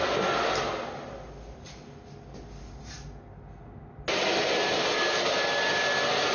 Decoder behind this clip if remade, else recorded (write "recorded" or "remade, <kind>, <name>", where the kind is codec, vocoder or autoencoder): recorded